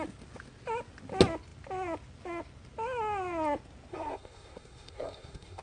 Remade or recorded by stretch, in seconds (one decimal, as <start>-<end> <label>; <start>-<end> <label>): 0.0-3.9 recorded; 3.9-5.6 remade